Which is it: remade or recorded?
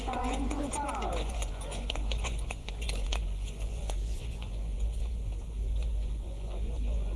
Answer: remade